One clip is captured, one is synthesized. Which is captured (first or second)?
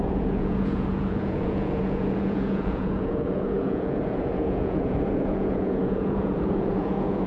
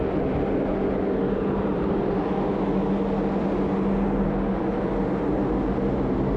second